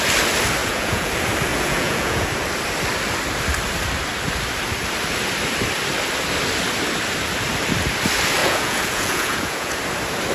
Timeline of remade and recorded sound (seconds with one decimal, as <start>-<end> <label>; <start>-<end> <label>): 0.0-0.6 recorded; 0.6-1.1 remade; 1.1-1.5 recorded; 1.5-2.3 remade; 2.3-8.4 recorded; 8.4-9.8 remade; 9.8-10.3 recorded